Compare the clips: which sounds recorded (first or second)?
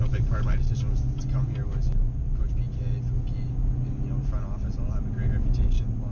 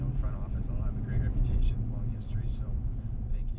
first